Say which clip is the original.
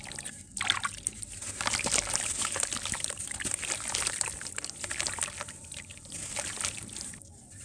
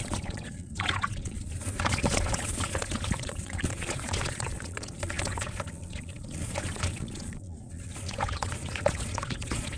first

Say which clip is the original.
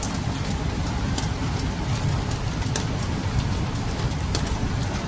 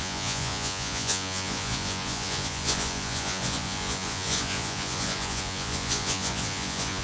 first